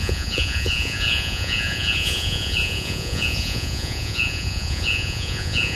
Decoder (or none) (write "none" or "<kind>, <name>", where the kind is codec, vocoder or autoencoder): vocoder, Vocos